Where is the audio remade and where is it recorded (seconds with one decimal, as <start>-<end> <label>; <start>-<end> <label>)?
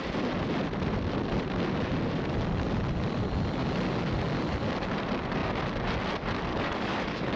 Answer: 0.0-6.5 recorded; 6.5-7.4 remade